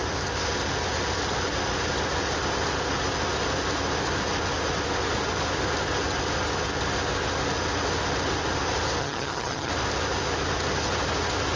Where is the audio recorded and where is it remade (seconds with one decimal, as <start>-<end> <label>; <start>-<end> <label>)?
0.0-9.0 recorded; 9.0-9.7 remade; 9.7-11.6 recorded